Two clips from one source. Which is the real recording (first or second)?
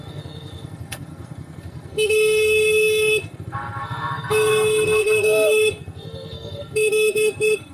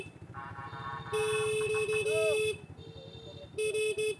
second